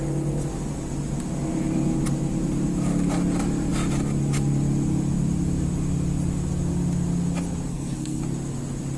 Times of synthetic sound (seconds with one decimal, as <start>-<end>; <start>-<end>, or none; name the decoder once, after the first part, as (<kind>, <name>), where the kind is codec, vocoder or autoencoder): 7.7-8.2 (codec, SNAC)